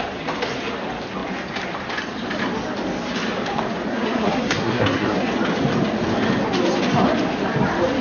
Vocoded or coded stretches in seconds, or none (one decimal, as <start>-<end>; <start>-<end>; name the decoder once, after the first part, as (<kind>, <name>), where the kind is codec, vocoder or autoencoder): 3.9-5.3 (codec, SNAC)